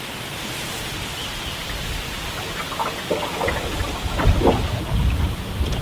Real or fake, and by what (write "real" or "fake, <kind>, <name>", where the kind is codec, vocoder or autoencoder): fake, vocoder, BigVGAN v2